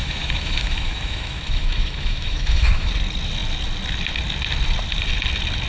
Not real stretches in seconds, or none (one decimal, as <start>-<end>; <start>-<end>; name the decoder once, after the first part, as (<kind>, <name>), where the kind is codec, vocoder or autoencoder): 0.0-2.9 (autoencoder, DAC-VAE)